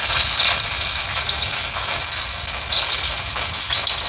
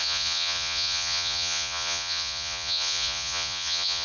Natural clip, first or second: first